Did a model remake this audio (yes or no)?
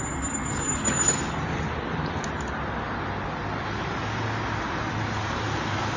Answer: no